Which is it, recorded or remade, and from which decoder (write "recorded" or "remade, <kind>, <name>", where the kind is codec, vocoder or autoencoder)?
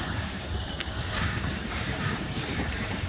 remade, codec, DAC